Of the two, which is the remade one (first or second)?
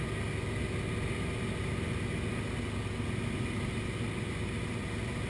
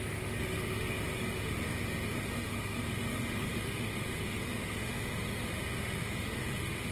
second